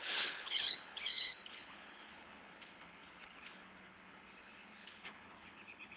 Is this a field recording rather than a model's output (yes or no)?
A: no